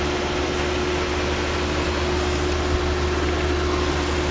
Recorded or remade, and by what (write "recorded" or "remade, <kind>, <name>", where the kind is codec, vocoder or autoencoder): recorded